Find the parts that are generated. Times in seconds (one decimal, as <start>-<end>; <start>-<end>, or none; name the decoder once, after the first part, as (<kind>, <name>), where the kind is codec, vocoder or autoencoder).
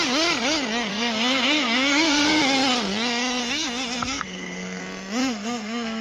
0.9-2.4 (codec, SNAC); 3.4-4.8; 5.2-6.0